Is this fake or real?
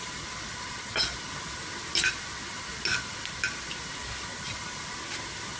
real